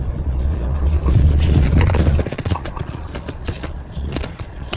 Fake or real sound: fake